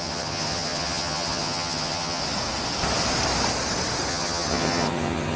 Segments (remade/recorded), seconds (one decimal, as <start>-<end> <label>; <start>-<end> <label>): 0.0-2.2 remade; 2.2-4.1 recorded; 4.1-5.4 remade